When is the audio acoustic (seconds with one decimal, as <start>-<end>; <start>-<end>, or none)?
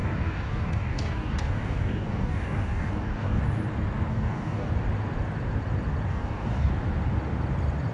3.4-4.1; 4.7-6.1; 6.7-7.9